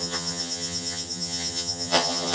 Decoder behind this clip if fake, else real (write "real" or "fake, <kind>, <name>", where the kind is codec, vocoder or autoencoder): fake, vocoder, HiFi-GAN